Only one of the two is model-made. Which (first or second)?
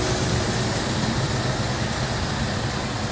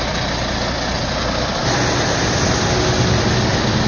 first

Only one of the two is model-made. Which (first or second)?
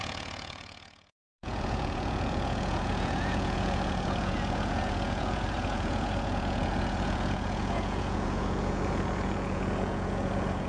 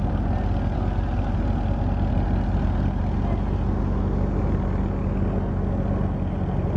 first